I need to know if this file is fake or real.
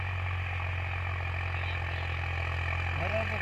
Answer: real